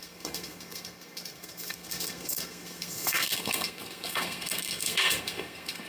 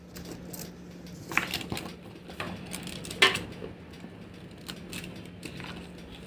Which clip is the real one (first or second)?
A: second